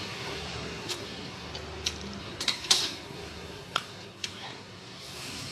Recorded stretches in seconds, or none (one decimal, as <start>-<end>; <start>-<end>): 1.5-2.2